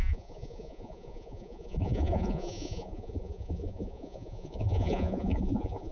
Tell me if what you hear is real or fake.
fake